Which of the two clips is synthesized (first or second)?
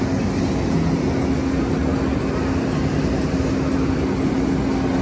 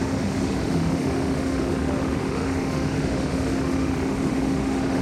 second